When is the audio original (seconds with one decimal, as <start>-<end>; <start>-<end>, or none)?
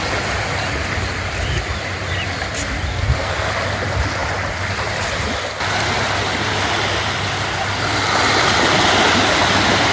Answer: 0.0-2.9; 3.5-9.9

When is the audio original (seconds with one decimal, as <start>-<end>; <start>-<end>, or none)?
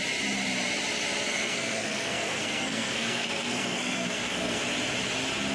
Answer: 0.0-1.3; 4.6-5.5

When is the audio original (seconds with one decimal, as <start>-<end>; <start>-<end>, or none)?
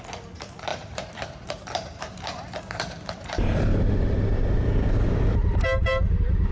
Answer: 0.0-0.7; 4.6-5.4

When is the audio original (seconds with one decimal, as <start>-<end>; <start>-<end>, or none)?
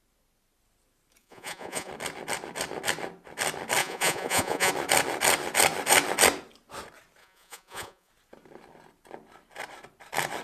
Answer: 0.0-1.2; 1.9-3.8; 4.7-7.2; 8.1-10.4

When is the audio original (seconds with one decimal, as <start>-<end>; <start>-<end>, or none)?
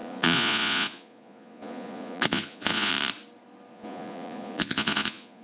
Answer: 2.9-3.7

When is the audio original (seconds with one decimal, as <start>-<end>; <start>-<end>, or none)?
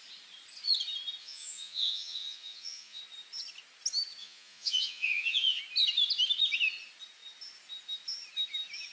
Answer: 0.0-1.2; 3.0-4.2; 5.6-8.9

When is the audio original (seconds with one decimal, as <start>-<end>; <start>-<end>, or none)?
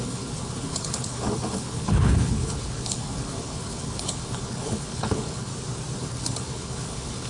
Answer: 5.5-6.0